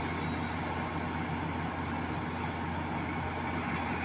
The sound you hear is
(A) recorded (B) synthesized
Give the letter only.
A